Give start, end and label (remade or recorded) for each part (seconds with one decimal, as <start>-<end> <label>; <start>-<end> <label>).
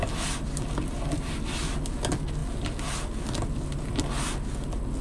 0.0-5.0 recorded